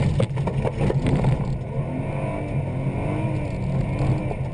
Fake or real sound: real